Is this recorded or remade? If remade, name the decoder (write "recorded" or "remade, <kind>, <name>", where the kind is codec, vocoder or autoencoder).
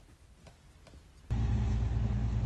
recorded